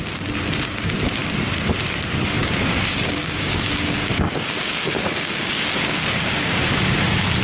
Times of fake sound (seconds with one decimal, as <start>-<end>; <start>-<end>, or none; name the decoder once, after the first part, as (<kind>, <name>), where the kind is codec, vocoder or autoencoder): 2.4-6.8 (codec, DAC)